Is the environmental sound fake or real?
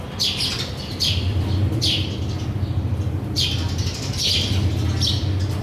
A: fake